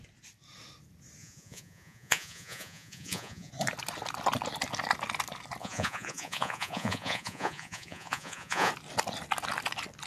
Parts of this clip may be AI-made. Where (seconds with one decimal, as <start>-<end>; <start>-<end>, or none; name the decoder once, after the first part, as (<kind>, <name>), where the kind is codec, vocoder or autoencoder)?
1.2-3.5 (vocoder, Vocos); 5.6-8.7